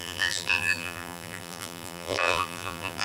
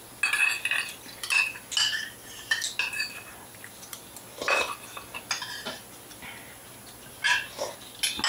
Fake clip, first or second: first